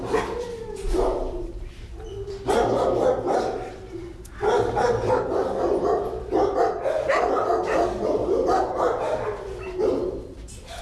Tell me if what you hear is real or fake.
fake